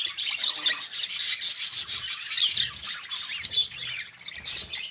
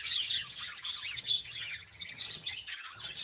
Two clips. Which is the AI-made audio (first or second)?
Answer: second